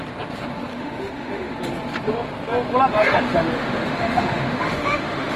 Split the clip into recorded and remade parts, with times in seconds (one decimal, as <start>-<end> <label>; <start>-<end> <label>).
0.0-0.7 recorded; 0.7-1.5 remade; 1.5-3.0 recorded; 3.0-5.4 remade